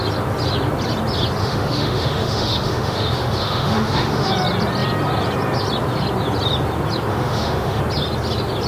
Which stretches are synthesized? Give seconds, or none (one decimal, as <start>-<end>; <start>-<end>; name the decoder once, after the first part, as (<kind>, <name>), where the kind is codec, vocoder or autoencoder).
1.4-4.3 (autoencoder, DAC-VAE); 7.1-7.8